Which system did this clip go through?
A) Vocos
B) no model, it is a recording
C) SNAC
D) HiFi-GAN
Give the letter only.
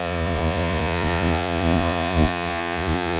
A